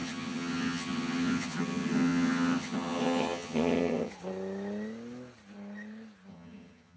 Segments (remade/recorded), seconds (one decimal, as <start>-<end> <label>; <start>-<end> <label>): 0.0-4.1 remade; 4.1-6.3 recorded; 6.3-7.0 remade